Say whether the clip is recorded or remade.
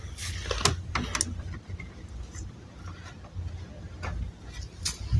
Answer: recorded